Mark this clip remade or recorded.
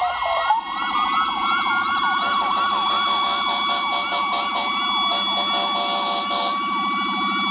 recorded